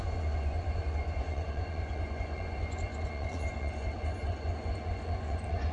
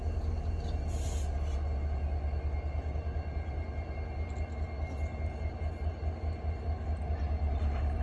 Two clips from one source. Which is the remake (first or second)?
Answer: first